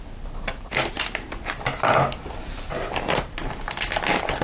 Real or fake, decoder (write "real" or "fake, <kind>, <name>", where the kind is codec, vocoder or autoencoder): real